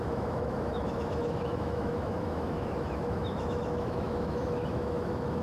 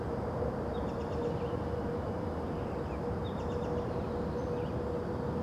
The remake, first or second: first